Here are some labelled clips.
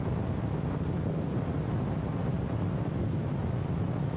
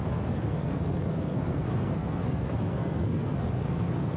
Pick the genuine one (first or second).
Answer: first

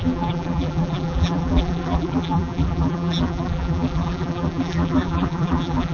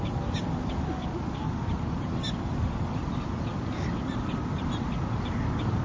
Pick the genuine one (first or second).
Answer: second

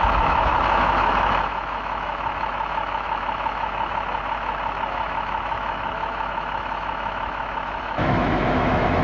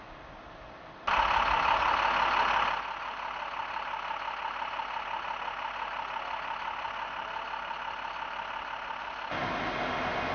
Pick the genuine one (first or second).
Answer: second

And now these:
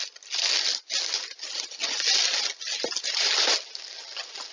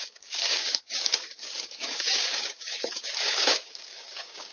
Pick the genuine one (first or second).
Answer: first